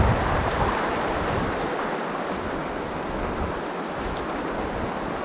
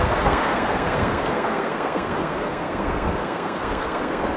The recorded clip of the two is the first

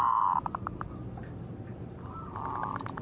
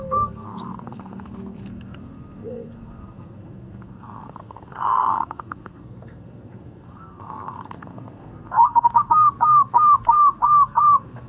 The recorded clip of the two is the first